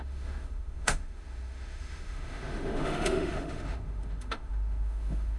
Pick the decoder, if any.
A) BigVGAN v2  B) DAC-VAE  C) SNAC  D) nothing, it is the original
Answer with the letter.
B